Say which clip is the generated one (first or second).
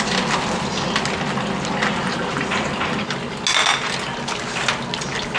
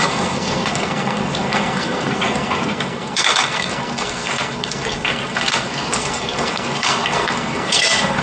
second